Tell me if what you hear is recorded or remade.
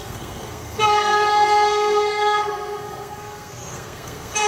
remade